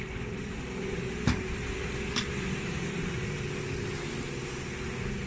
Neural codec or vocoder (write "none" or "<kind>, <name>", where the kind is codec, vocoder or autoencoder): none